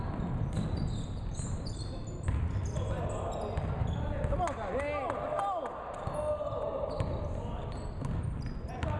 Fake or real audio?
real